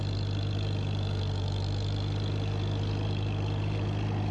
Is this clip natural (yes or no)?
yes